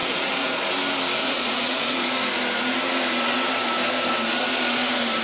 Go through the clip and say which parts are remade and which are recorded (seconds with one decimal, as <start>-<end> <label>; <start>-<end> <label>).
0.0-0.7 remade; 0.7-1.2 recorded; 1.2-2.1 remade; 2.1-5.2 recorded